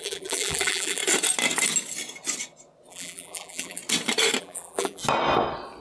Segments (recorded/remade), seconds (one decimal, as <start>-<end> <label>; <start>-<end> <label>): 0.0-1.0 remade; 1.0-2.9 recorded; 2.9-3.8 remade; 3.8-4.4 recorded; 4.4-5.0 remade; 5.0-5.8 recorded